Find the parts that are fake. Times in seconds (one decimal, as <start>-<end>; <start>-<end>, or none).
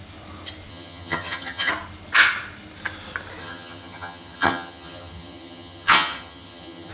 0.7-1.7; 3.4-6.9